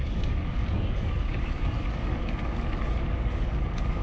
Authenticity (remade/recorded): remade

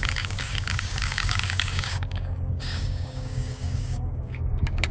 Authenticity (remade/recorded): remade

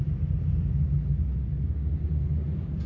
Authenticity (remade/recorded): recorded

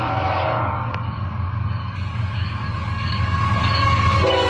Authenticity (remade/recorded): remade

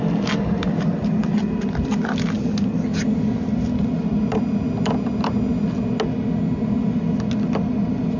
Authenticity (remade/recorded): recorded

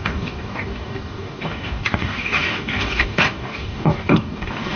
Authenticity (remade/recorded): remade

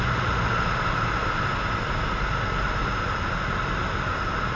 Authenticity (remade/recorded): recorded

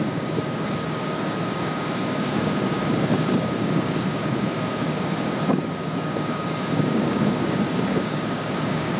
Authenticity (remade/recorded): remade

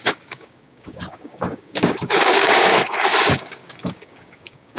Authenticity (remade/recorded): remade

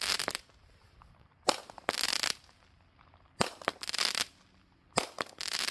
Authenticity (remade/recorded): recorded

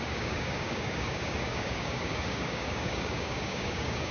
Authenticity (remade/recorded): remade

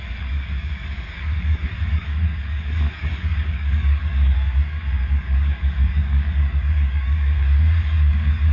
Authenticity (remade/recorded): remade